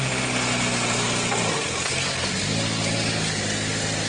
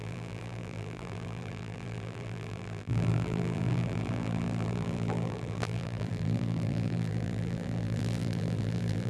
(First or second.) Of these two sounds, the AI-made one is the second